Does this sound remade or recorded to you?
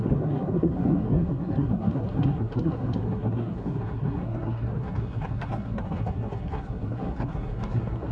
remade